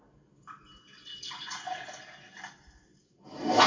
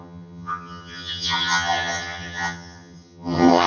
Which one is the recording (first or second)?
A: first